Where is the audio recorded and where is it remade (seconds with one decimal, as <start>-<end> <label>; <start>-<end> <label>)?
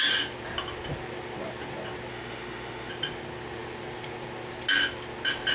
0.0-2.1 recorded; 2.1-2.9 remade; 2.9-5.5 recorded